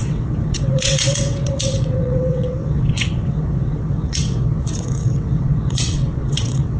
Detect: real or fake fake